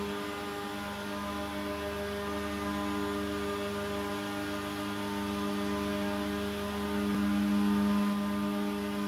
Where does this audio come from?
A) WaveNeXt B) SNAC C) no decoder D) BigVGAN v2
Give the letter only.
C